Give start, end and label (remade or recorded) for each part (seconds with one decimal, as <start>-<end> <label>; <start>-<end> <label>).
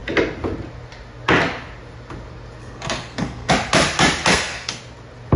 0.0-2.6 recorded; 2.6-3.5 remade; 3.5-4.3 recorded; 4.3-4.8 remade; 4.8-5.4 recorded